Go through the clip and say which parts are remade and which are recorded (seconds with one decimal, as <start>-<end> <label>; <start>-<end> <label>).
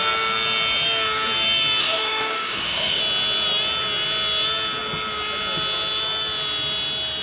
0.0-1.8 recorded; 1.8-3.0 remade; 3.0-7.2 recorded